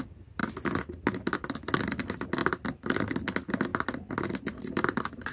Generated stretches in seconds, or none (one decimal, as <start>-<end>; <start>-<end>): none